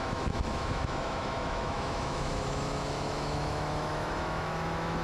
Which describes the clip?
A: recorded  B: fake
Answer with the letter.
B